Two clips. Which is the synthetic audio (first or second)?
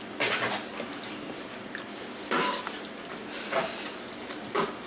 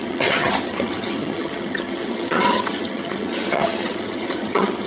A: second